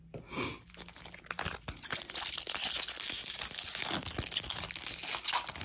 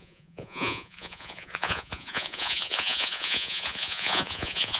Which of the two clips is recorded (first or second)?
first